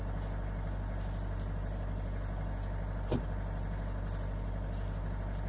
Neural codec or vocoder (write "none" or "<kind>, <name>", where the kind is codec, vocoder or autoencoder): none